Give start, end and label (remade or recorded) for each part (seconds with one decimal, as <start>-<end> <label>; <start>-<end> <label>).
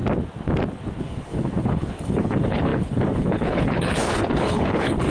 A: 0.0-1.0 recorded; 1.0-5.1 remade